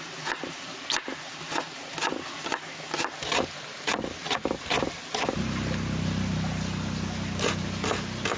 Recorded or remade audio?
recorded